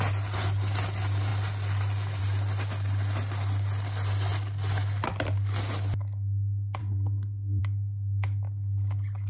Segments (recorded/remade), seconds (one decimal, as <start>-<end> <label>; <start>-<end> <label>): 0.0-6.8 recorded; 6.8-7.6 remade; 7.6-9.3 recorded